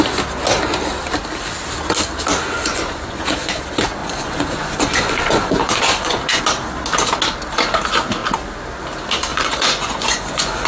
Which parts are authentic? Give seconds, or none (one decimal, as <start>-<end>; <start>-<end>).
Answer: 0.0-2.7; 3.6-4.0; 6.4-9.3